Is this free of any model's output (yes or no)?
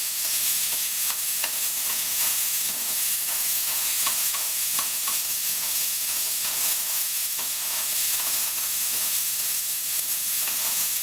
no